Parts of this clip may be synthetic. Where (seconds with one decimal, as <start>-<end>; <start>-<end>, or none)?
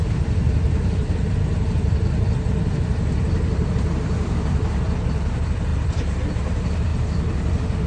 none